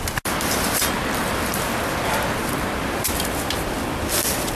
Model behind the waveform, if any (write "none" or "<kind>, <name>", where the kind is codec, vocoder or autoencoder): none